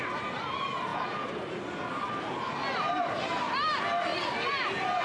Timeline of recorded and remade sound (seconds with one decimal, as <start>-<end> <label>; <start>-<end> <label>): 0.0-4.1 recorded; 4.1-5.0 remade